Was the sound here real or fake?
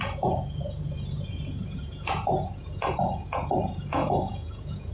fake